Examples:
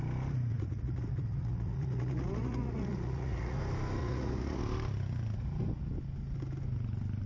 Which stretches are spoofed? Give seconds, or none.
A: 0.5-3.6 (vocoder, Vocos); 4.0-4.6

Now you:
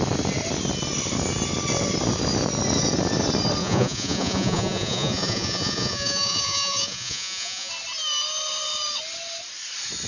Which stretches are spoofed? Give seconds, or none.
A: 3.6-7.7 (vocoder, Vocos)

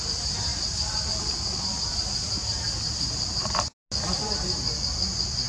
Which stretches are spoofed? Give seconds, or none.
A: none